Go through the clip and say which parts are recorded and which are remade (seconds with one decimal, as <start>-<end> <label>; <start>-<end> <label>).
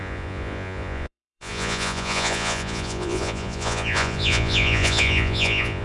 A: 0.0-5.8 remade